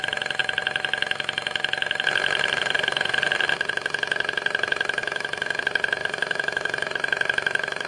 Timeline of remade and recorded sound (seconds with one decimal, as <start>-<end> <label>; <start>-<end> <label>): 0.0-5.0 recorded; 5.0-5.6 remade; 5.6-6.0 recorded; 6.0-6.9 remade; 6.9-7.9 recorded